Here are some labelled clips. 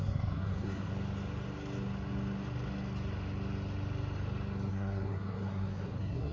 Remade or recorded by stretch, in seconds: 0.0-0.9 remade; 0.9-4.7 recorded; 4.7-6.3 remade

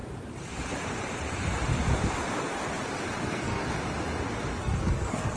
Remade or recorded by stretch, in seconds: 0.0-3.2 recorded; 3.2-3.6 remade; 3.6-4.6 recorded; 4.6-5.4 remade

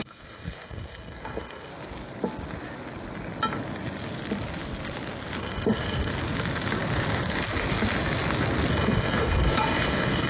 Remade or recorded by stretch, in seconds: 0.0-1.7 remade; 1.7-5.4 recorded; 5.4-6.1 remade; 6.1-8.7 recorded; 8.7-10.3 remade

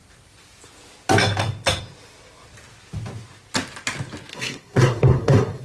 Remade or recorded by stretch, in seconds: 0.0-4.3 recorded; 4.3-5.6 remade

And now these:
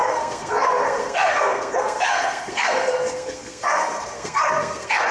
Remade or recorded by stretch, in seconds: 0.0-5.1 remade

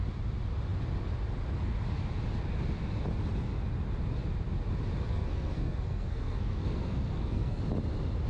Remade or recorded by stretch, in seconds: 0.0-5.1 recorded; 5.1-7.6 remade; 7.6-8.3 recorded

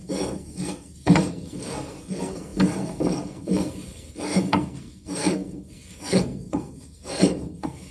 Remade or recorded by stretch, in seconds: 0.0-7.9 remade